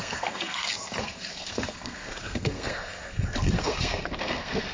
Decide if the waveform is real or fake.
fake